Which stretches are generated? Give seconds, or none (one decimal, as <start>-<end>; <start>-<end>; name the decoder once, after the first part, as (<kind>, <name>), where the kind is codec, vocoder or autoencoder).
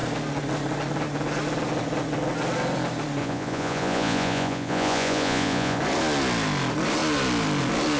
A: 3.2-5.8 (vocoder, Vocos)